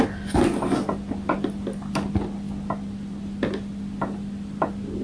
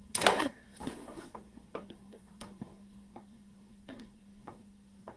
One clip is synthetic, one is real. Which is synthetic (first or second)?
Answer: second